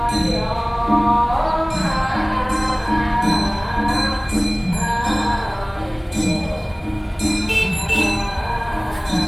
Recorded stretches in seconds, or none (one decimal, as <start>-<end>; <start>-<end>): 0.0-1.8; 7.0-7.7